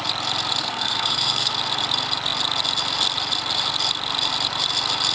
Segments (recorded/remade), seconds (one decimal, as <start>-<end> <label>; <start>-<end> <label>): 0.0-0.6 recorded; 0.6-1.5 remade; 1.5-5.1 recorded